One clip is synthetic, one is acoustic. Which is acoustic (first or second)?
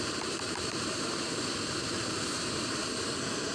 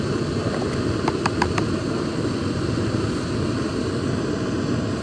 second